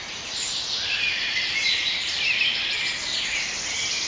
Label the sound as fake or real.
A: real